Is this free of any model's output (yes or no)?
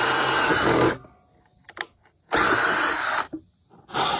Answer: yes